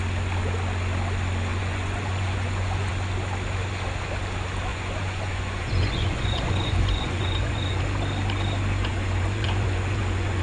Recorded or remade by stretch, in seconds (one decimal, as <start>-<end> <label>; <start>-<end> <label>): 0.0-1.5 recorded; 1.5-2.9 remade; 2.9-4.7 recorded; 4.7-7.8 remade; 7.8-8.8 recorded; 8.8-10.4 remade

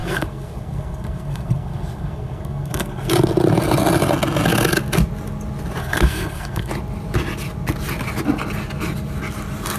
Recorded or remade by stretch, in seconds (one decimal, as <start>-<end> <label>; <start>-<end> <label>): 0.0-3.1 remade; 3.1-5.8 recorded; 5.8-6.7 remade; 6.7-9.8 recorded

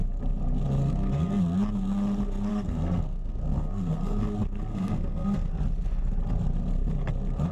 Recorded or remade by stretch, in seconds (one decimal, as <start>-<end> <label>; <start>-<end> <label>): 0.0-0.8 recorded; 0.8-1.4 remade; 1.4-2.5 recorded; 2.5-4.2 remade; 4.2-4.7 recorded; 4.7-5.5 remade; 5.5-7.5 recorded

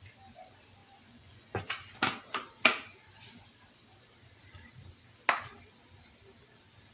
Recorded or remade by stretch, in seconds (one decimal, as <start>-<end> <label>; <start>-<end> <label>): 0.0-0.8 recorded; 0.8-1.6 remade; 1.6-6.9 recorded

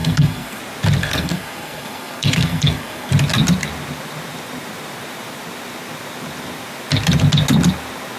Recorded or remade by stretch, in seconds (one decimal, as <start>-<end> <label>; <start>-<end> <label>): 0.0-0.6 remade; 0.6-1.0 recorded; 1.0-3.1 remade; 3.1-8.2 recorded